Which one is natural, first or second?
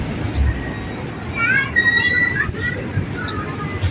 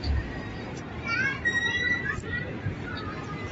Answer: first